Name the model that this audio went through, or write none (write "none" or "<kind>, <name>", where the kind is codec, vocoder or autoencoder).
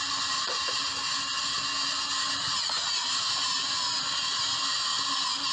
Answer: none